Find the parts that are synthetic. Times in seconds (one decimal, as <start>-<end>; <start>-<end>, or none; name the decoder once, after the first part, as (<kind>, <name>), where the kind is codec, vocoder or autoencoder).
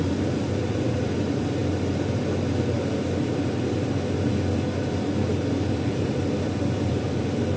0.0-1.6 (vocoder, BigVGAN v2); 5.7-7.6